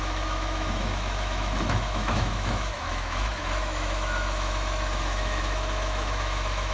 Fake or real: fake